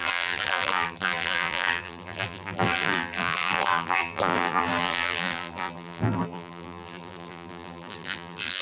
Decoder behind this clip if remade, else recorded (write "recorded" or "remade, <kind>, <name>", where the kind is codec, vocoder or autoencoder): remade, vocoder, BigVGAN v2